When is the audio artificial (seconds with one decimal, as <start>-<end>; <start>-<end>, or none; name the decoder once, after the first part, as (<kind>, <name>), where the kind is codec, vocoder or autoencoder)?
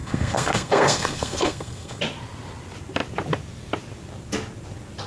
0.0-2.0 (codec, SNAC)